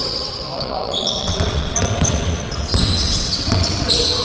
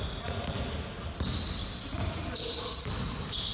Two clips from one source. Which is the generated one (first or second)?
first